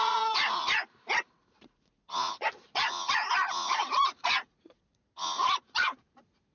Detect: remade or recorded remade